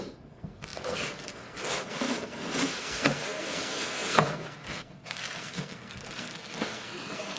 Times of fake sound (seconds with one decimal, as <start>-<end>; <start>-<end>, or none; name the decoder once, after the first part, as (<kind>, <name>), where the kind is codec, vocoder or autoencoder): 0.0-7.4 (codec, SNAC)